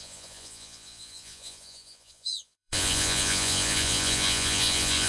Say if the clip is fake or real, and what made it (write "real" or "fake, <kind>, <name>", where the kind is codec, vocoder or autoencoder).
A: fake, vocoder, Vocos